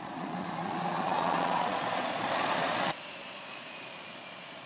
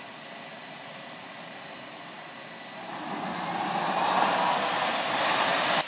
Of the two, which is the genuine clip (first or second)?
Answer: second